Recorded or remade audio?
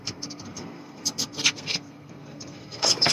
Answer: remade